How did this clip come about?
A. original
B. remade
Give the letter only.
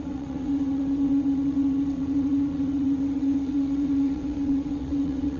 B